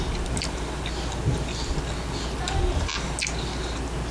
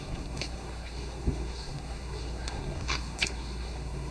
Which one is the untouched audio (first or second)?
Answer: first